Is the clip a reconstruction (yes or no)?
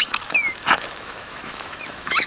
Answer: yes